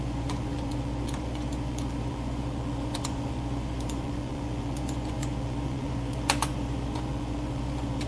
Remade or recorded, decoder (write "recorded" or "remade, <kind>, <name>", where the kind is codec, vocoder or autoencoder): remade, vocoder, Vocos